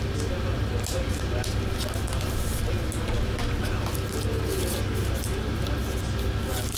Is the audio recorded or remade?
recorded